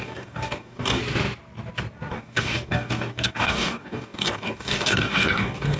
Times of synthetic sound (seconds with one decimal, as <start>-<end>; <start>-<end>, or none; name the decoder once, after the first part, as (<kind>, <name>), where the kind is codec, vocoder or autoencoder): 0.0-1.0 (codec, DAC); 2.1-5.8